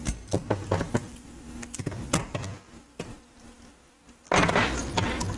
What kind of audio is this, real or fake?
real